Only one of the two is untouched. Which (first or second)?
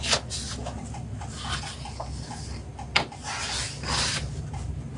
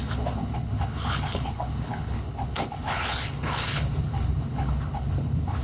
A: first